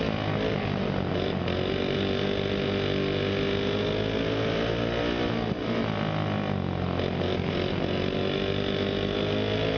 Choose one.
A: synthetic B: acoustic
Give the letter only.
B